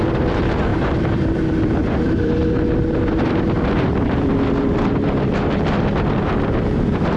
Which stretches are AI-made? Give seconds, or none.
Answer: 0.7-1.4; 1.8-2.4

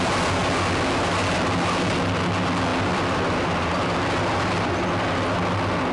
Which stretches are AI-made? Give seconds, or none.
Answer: 2.7-4.9

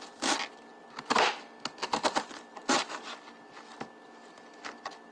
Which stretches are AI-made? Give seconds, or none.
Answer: none

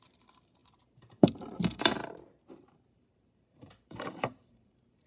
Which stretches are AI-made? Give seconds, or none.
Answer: 0.0-2.0; 2.5-5.1

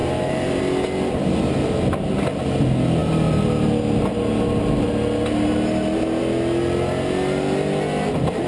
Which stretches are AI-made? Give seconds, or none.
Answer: 0.0-0.6